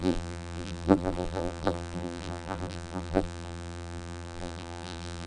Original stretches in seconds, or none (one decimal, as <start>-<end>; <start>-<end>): none